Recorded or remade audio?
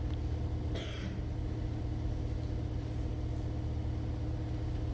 recorded